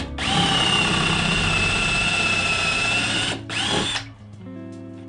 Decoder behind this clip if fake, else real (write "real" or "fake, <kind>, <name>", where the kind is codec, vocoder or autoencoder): real